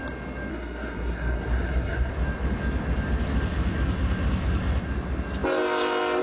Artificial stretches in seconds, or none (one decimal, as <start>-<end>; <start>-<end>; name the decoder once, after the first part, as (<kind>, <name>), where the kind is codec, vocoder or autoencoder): 0.5-2.1 (codec, SNAC)